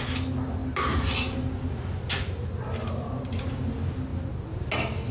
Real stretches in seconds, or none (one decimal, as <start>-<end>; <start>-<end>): 0.0-5.1

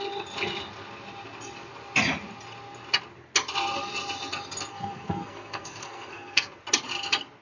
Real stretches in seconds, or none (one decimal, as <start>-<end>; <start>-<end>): 0.0-4.7; 6.6-7.4

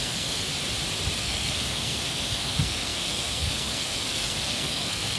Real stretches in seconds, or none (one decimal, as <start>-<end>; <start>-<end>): 0.5-1.2

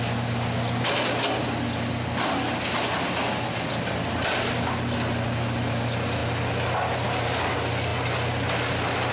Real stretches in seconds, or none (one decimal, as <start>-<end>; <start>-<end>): 0.0-9.1